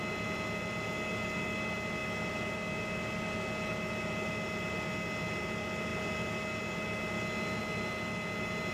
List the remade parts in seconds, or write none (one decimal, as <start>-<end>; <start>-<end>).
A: none